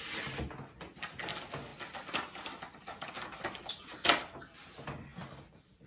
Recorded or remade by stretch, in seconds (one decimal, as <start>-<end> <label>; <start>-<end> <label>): 0.0-5.9 recorded